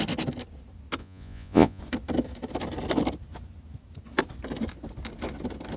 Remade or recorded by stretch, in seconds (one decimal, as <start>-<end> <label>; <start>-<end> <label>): 0.0-1.0 recorded; 1.0-1.8 remade; 1.8-5.8 recorded

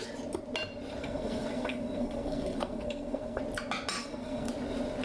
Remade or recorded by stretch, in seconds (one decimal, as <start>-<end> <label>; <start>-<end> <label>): 0.0-1.0 recorded; 1.0-3.4 remade; 3.4-4.0 recorded; 4.0-4.5 remade; 4.5-5.0 recorded

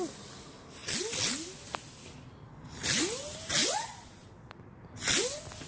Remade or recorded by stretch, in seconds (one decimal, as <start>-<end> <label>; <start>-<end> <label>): 0.0-3.6 recorded; 3.6-4.6 remade; 4.6-5.7 recorded